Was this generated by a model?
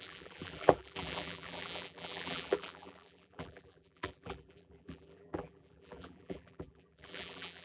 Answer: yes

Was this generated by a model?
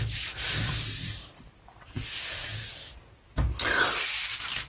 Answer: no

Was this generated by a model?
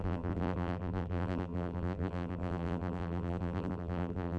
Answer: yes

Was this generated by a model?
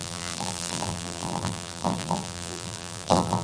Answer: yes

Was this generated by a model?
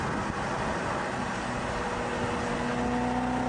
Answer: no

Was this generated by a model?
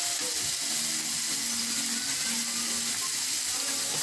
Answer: no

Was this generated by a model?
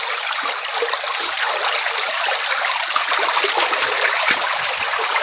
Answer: no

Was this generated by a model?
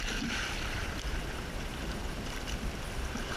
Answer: no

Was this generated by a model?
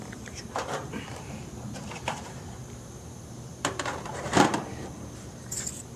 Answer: yes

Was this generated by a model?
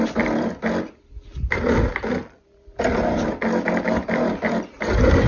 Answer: no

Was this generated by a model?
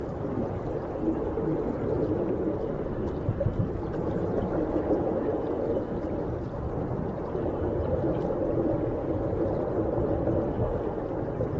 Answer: no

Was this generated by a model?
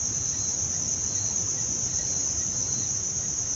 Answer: yes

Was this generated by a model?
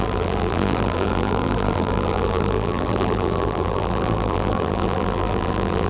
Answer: yes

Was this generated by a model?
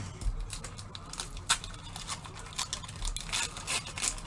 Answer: no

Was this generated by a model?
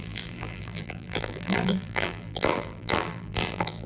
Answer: yes